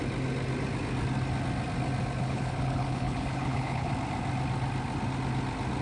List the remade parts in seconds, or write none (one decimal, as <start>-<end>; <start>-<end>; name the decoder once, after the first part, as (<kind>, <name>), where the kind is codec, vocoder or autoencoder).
2.2-3.9 (codec, HILCodec)